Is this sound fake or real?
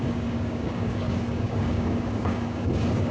fake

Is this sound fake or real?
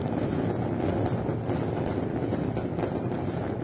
real